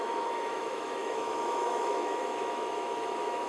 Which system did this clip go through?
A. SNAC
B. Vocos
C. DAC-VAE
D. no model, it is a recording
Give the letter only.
C